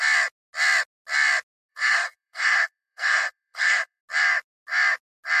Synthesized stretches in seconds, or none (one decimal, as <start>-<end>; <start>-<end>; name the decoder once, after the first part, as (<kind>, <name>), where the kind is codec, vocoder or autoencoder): 1.7-4.0 (codec, SNAC)

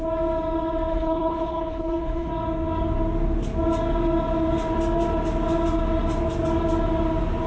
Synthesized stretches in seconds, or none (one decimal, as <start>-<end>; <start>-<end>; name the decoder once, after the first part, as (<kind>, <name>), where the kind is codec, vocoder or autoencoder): 0.9-2.3 (codec, HILCodec)

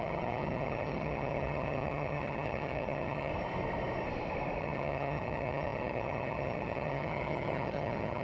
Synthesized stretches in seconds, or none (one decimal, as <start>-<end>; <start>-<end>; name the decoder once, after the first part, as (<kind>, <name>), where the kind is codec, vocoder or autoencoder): 0.0-3.3 (vocoder, HiFi-GAN); 4.6-8.2